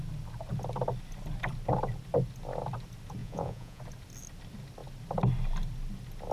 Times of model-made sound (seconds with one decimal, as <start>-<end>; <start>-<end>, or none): 3.2-3.8